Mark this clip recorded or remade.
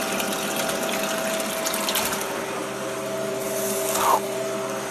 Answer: recorded